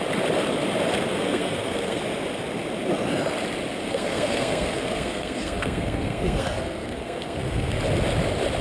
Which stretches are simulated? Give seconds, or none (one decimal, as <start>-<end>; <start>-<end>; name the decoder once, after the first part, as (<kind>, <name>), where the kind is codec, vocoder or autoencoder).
1.1-2.0 (codec, SNAC); 3.8-7.8